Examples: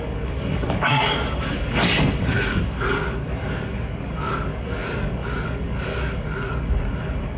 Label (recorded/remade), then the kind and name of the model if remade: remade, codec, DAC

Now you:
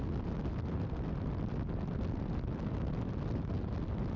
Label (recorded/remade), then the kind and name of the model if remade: recorded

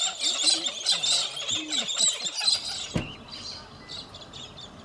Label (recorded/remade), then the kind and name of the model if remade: recorded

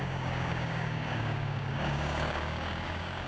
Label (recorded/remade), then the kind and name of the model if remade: remade, codec, DAC